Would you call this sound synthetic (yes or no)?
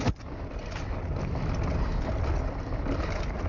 no